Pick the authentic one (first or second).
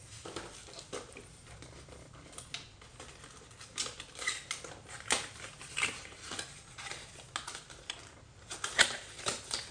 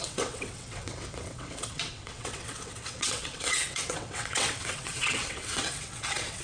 first